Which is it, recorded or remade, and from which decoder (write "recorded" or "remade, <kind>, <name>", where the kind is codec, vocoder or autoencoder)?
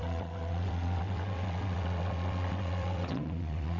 remade, vocoder, WaveNeXt